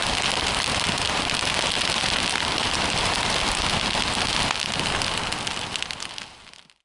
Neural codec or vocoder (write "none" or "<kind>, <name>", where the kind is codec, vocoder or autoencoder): none